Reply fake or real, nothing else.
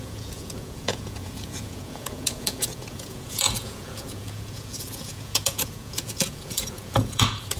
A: fake